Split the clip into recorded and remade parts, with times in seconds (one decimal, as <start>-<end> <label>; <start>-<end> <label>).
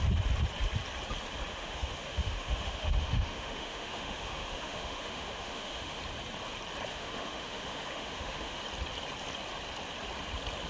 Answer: 0.0-1.5 recorded; 1.5-6.0 remade; 6.0-6.9 recorded; 6.9-8.6 remade; 8.6-10.7 recorded